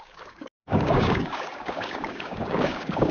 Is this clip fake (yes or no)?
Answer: yes